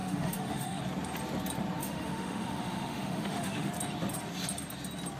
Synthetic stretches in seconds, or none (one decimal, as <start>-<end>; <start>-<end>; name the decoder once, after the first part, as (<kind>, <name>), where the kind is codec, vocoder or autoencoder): 0.0-0.8 (autoencoder, DAC-VAE); 1.8-3.7

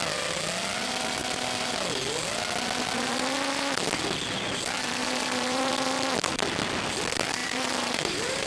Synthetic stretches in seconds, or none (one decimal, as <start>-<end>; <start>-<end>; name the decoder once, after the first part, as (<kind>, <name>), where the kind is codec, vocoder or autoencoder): 5.0-5.7 (vocoder, BigVGAN v2); 7.4-8.5

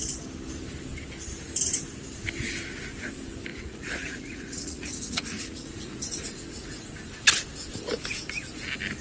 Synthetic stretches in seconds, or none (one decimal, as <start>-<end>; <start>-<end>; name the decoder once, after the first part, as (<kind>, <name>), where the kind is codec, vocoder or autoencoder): 3.5-6.9 (vocoder, Vocos)

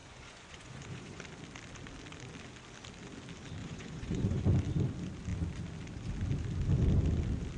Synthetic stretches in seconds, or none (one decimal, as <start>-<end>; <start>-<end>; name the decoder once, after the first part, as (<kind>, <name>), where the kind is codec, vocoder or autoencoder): 0.0-1.2 (vocoder, Vocos); 3.6-4.4